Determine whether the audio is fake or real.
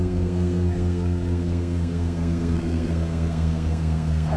fake